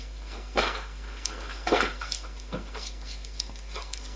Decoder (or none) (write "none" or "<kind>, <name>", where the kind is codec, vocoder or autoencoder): codec, SNAC